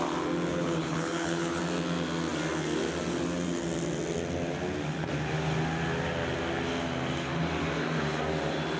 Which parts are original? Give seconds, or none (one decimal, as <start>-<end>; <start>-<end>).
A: 0.0-0.5; 1.6-8.8